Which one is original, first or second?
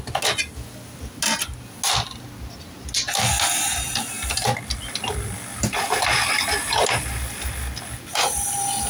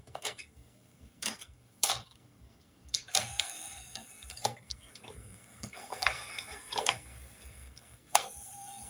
first